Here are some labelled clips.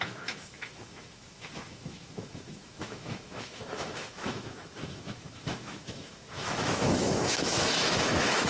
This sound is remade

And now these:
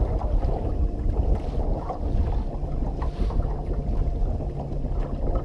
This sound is recorded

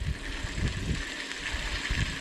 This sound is recorded